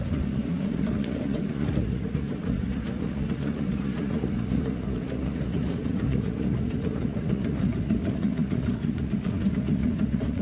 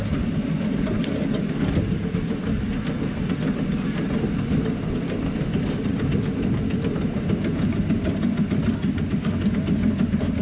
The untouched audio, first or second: second